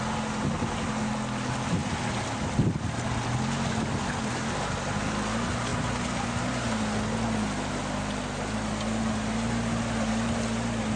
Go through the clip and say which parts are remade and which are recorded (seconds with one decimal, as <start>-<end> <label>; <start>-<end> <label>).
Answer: 0.0-11.0 recorded